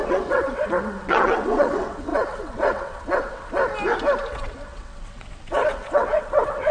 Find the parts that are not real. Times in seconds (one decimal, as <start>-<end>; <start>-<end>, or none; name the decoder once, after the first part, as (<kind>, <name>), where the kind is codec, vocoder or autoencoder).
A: 0.0-3.6 (vocoder, WaveNeXt); 4.3-6.7

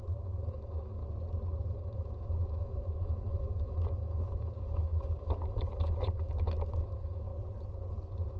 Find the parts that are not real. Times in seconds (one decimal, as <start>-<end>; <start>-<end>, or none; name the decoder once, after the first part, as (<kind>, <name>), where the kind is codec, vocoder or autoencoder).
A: 0.0-1.0 (autoencoder, DAC-VAE); 1.6-7.3

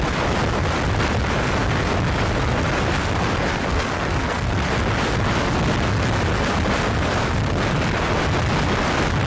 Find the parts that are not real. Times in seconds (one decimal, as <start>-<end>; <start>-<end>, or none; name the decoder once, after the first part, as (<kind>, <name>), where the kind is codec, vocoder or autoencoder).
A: 3.5-4.5 (codec, SNAC)

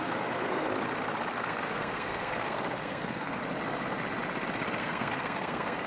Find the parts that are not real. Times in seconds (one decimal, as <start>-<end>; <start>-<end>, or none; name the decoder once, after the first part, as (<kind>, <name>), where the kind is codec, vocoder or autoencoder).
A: 0.0-0.7 (codec, SNAC); 1.3-3.4; 4.8-5.9

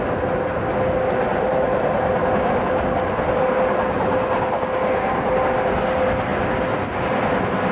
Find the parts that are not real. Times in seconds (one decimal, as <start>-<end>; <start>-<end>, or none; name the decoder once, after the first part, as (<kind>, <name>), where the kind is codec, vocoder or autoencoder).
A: none

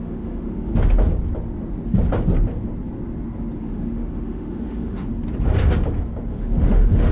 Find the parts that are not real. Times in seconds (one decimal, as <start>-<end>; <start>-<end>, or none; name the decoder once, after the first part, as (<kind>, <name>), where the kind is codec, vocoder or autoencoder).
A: 0.0-0.7 (autoencoder, DAC-VAE); 3.6-5.1; 6.3-7.1

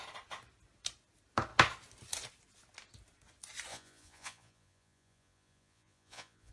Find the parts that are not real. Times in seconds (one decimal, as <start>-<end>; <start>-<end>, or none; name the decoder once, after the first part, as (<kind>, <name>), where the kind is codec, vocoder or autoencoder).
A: 3.7-6.5 (vocoder, Vocos)